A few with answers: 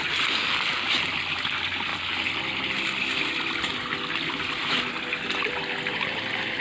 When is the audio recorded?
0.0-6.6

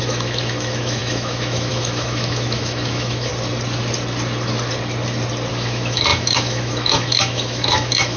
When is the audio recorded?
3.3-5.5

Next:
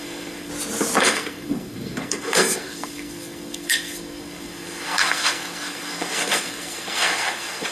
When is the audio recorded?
0.5-1.0